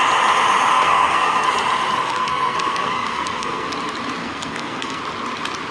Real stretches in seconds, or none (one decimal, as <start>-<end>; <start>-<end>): 0.0-0.7; 1.5-2.0; 3.7-4.2; 5.0-5.7